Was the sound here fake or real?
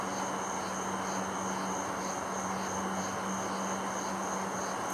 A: real